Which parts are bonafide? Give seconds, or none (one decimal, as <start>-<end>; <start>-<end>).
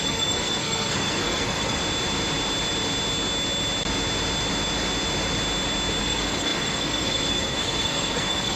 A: 1.8-6.0